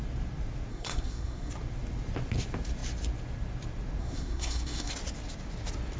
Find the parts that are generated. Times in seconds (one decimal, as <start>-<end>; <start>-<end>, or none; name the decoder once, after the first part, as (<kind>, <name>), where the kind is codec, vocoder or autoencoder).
0.7-1.5 (codec, SNAC); 4.0-4.9